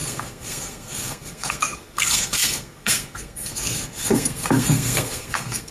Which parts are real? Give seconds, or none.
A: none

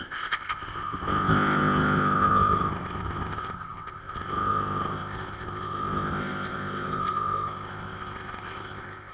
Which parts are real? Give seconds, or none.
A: none

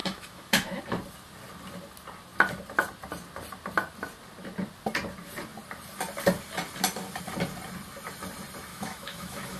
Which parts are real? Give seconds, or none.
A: 0.8-8.7